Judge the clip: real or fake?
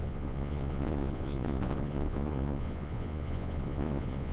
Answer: fake